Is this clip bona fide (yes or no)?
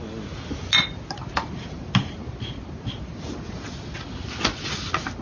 yes